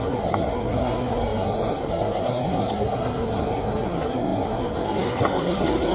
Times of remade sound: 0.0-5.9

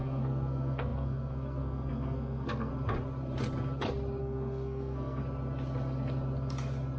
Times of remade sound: 0.0-2.7; 4.2-5.2

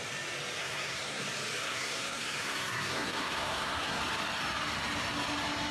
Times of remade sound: 0.6-1.2; 1.6-4.0

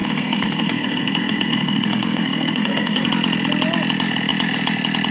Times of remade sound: 0.0-3.1

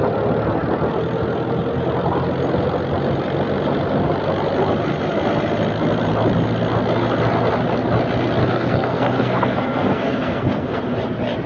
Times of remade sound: 8.4-10.8